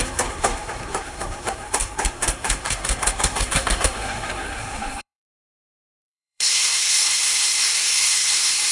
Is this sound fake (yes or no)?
yes